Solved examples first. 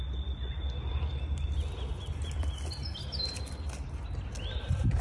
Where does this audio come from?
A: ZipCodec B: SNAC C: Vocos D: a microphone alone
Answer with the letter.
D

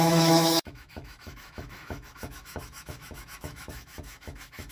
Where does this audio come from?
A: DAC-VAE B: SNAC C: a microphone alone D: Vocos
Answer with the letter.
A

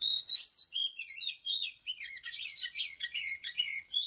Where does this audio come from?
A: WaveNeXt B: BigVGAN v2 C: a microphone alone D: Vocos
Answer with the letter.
D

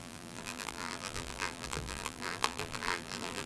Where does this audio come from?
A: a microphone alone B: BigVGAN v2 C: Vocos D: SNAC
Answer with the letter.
B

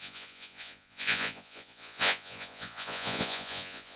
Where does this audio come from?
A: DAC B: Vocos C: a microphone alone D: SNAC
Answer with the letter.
B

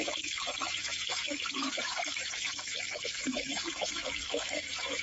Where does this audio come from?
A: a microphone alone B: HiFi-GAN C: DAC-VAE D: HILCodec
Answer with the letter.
C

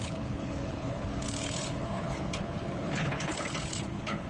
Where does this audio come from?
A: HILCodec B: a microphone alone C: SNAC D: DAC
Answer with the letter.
A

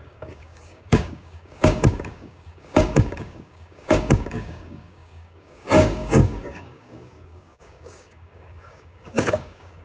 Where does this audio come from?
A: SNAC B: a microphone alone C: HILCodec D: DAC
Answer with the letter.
D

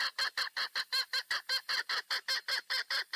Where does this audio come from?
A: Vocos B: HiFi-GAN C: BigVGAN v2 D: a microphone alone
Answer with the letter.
D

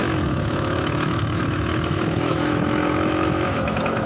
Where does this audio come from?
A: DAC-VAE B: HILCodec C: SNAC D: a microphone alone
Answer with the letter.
A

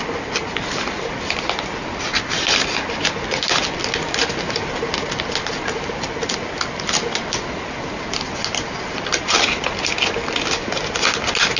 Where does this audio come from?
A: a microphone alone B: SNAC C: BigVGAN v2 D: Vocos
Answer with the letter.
A